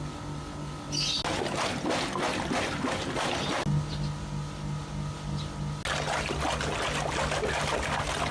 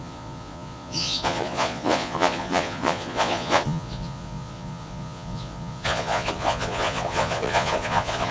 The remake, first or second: second